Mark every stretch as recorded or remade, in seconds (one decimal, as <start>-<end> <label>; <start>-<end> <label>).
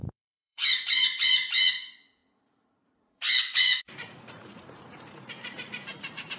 0.0-6.4 remade